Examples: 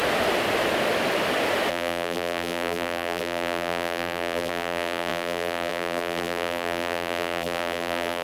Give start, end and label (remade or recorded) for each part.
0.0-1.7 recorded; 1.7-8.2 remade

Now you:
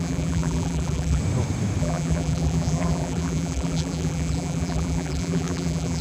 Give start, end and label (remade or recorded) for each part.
0.0-1.2 remade; 1.2-1.8 recorded; 1.8-6.0 remade

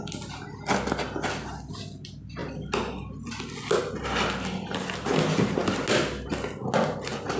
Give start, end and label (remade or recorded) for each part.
0.0-7.4 recorded

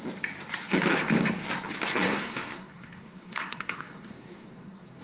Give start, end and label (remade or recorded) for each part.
0.0-2.1 recorded; 2.1-5.0 remade